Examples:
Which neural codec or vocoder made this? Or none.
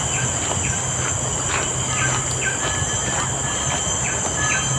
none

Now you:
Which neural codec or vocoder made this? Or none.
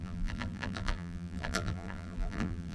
vocoder, BigVGAN v2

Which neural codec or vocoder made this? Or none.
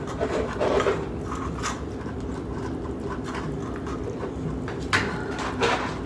none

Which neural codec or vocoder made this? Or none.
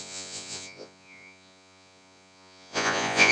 vocoder, Vocos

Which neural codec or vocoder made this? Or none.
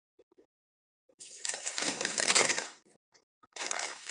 codec, SNAC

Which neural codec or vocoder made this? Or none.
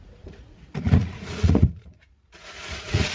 vocoder, Vocos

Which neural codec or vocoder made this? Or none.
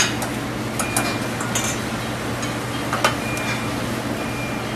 none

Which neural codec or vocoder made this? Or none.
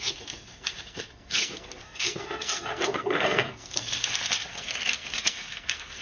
codec, SNAC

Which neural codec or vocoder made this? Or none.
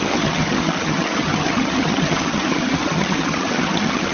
vocoder, HiFi-GAN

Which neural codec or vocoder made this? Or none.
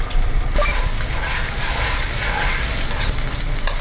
vocoder, BigVGAN v2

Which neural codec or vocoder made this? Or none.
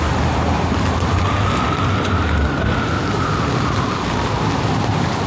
none